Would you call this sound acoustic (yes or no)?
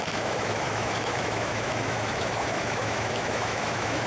no